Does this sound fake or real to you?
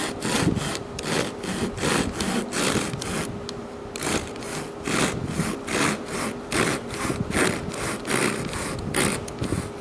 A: real